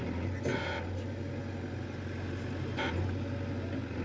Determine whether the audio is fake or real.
real